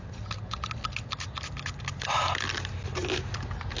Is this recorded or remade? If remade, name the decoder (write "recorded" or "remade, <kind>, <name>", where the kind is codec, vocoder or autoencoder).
recorded